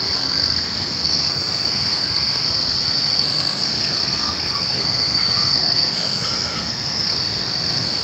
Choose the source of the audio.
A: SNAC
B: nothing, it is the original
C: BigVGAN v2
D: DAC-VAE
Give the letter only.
A